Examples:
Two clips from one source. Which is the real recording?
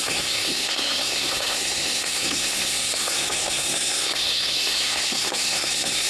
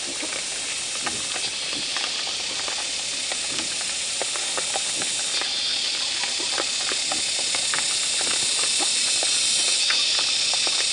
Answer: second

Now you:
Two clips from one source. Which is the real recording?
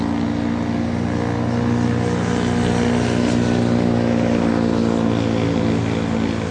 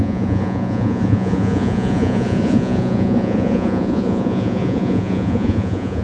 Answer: first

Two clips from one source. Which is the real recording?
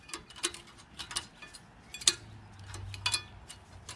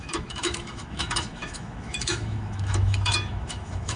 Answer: first